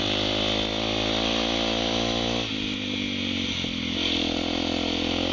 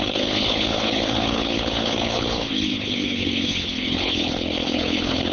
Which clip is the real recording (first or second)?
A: first